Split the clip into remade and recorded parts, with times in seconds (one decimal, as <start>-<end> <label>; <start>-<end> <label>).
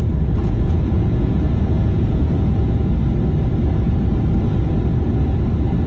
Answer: 0.0-0.4 recorded; 0.4-2.9 remade; 2.9-5.9 recorded